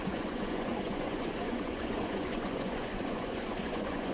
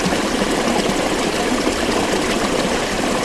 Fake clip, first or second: first